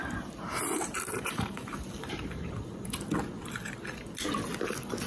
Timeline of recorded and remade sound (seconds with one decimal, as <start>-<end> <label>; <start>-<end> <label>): 0.0-2.5 remade; 2.5-5.1 recorded